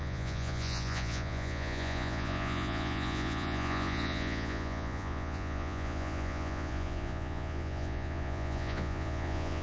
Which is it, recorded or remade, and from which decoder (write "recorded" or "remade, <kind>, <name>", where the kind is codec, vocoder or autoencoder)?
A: remade, vocoder, Vocos